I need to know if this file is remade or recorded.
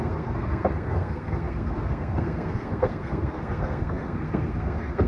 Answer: remade